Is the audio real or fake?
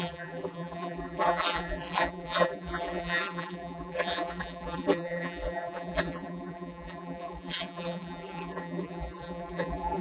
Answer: fake